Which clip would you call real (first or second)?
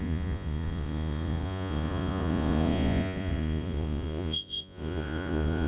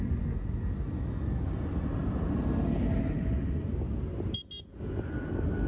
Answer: second